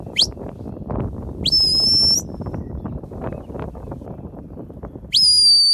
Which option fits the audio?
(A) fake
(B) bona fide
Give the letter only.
B